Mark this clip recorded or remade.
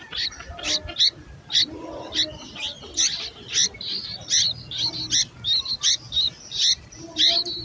recorded